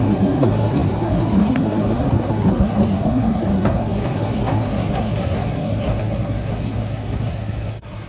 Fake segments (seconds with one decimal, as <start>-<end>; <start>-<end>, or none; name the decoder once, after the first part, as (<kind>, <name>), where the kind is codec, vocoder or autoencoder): 0.0-8.1 (codec, SNAC)